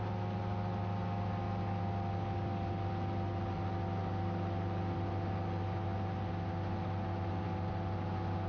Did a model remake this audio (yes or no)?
no